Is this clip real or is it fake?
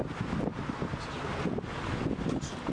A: real